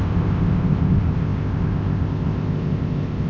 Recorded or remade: remade